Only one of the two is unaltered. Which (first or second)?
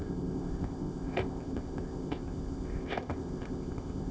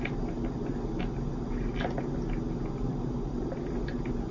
second